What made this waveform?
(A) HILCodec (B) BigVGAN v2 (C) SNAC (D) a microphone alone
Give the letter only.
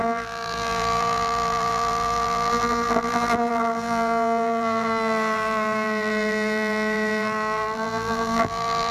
B